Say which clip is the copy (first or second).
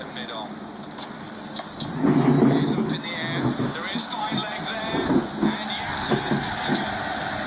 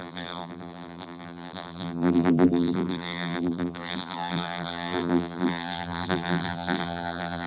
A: second